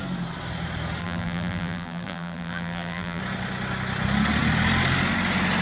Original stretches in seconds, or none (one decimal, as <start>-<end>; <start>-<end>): 0.0-1.0; 3.2-5.6